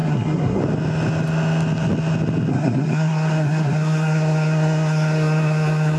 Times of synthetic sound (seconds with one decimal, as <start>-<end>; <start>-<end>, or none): 0.0-0.6; 2.5-6.0